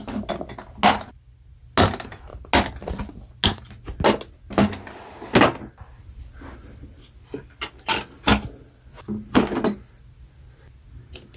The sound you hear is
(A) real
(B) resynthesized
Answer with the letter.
A